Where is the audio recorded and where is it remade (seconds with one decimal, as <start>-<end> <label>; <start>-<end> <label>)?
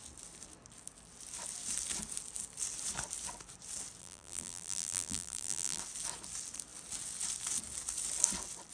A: 0.0-4.0 recorded; 4.0-5.8 remade; 5.8-8.7 recorded